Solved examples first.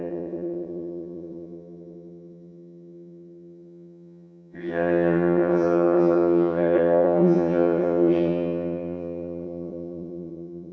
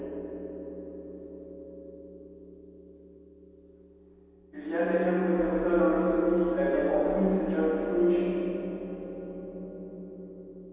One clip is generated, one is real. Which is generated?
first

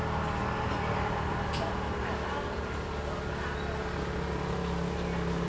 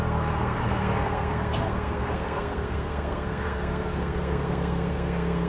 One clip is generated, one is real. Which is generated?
second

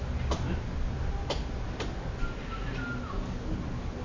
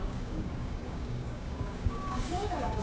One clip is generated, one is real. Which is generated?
second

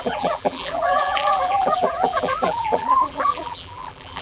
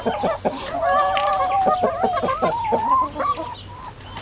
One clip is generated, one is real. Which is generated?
first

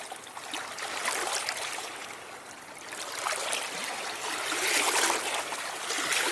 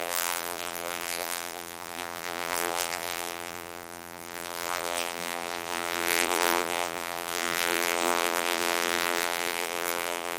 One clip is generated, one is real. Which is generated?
second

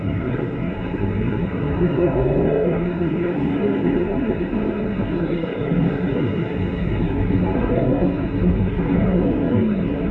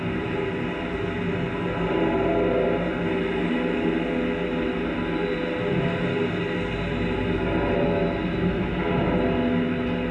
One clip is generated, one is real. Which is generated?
first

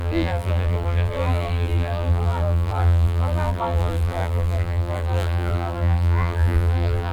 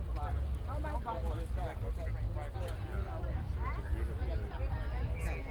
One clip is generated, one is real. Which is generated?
first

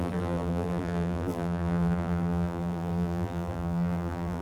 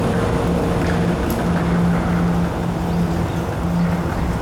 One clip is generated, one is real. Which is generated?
first